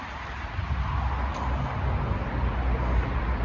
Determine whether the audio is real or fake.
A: real